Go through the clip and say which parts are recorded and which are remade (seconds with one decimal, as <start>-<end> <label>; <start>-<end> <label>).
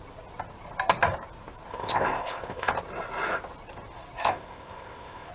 0.0-1.7 recorded; 1.7-2.7 remade; 2.7-4.2 recorded; 4.2-5.3 remade